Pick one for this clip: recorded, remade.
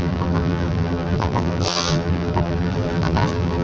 remade